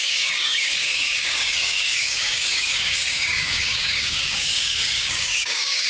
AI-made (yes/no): yes